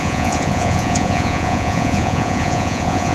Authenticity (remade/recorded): remade